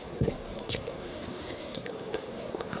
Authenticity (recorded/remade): remade